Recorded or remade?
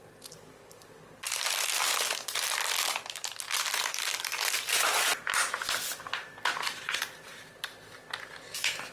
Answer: recorded